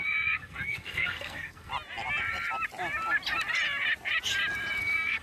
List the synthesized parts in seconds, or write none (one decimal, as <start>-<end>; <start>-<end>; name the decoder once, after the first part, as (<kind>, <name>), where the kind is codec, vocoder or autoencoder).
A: 0.0-1.7 (codec, SNAC); 4.8-5.2